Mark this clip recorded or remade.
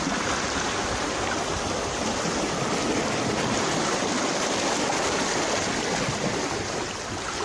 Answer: recorded